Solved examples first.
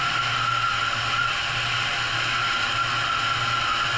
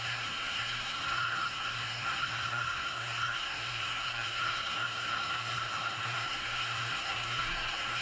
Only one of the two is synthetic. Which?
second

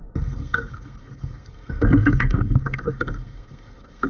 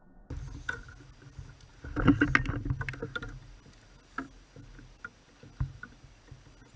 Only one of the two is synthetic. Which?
first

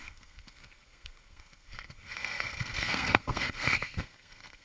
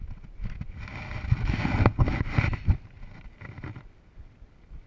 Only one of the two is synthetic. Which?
first